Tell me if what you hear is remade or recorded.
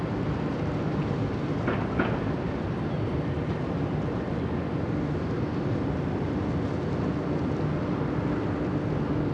recorded